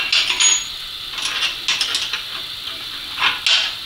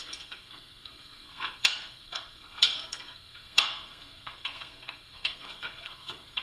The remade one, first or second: second